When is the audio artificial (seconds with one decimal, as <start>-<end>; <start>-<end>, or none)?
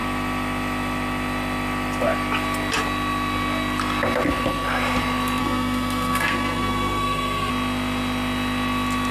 5.4-7.5